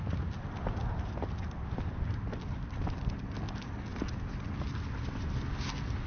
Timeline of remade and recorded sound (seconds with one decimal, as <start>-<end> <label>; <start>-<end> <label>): 0.0-6.1 recorded